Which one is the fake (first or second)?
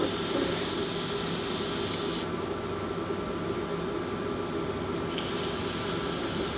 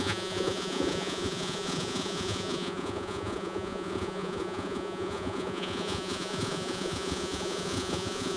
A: second